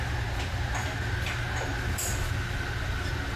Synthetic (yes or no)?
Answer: no